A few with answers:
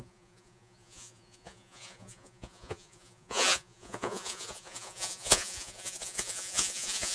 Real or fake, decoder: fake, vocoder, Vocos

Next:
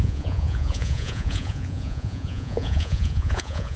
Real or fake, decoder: fake, vocoder, Vocos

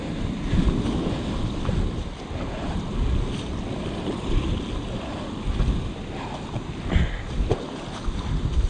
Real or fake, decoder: real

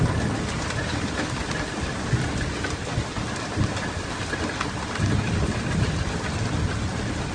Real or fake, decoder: real